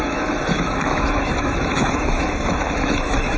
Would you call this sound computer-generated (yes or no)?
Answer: yes